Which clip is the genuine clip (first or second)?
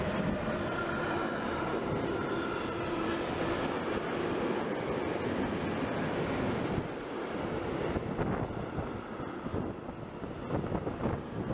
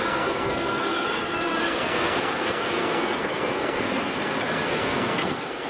first